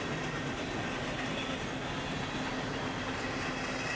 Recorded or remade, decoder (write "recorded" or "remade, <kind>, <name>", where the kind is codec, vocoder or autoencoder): recorded